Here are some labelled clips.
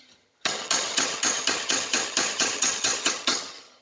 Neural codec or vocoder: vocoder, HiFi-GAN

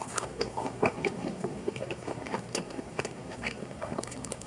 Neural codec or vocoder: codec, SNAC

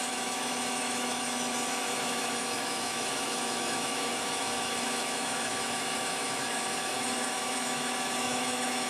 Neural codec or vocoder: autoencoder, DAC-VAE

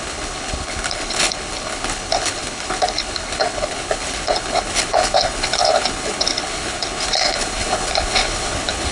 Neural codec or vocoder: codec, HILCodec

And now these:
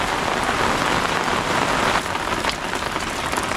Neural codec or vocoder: none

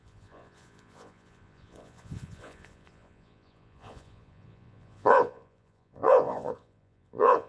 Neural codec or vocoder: vocoder, Vocos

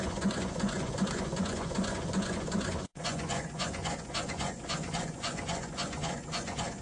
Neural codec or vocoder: vocoder, Vocos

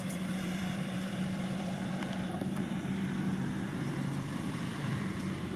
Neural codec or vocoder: vocoder, BigVGAN v2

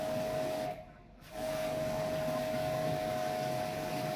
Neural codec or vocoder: codec, DAC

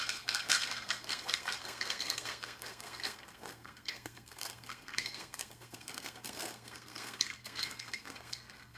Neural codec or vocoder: codec, SNAC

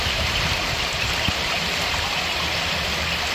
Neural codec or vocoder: none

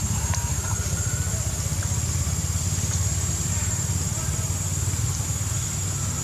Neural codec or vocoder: none